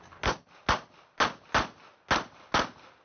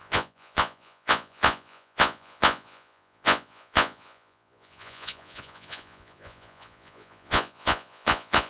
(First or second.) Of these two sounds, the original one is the first